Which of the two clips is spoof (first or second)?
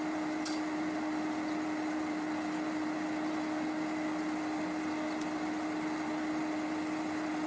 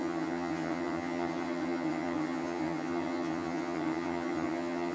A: second